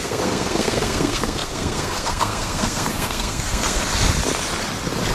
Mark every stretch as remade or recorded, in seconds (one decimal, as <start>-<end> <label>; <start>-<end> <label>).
0.0-3.8 remade; 3.8-5.1 recorded